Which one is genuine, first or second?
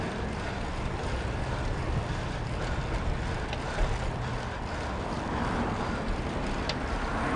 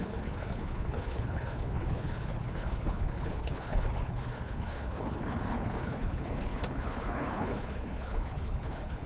first